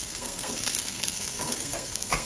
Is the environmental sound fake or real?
fake